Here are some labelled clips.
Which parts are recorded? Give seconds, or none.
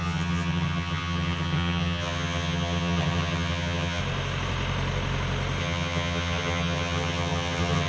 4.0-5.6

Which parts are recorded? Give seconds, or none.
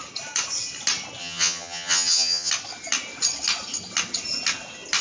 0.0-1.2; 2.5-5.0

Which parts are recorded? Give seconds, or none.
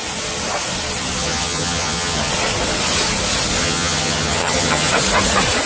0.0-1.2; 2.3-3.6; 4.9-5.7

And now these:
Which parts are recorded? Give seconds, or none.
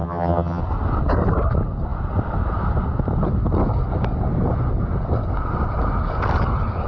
0.6-6.9